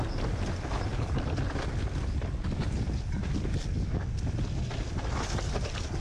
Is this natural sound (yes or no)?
yes